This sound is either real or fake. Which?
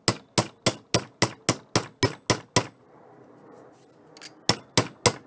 real